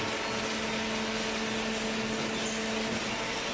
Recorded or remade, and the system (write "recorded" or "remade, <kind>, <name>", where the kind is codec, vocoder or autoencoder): recorded